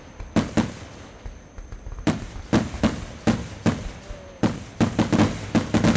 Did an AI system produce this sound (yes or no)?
no